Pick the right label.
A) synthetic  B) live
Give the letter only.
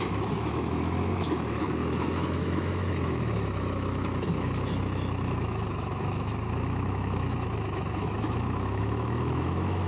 A